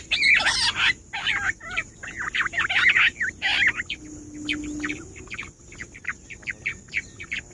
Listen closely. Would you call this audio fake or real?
real